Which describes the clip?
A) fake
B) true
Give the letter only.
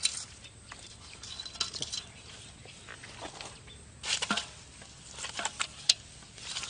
B